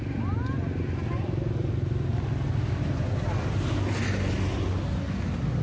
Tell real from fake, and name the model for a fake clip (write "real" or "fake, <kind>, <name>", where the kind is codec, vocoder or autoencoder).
real